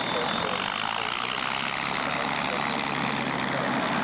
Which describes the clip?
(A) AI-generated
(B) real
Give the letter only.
B